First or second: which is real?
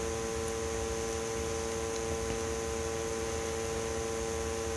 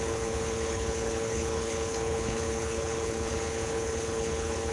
first